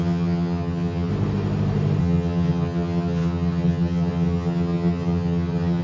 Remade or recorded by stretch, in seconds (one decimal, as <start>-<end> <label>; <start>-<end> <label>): 0.0-1.1 remade; 1.1-2.0 recorded; 2.0-5.8 remade

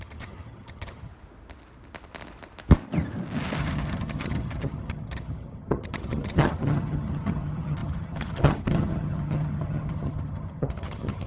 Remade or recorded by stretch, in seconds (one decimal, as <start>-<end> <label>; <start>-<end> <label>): 0.0-1.1 remade; 1.1-3.6 recorded; 3.6-11.3 remade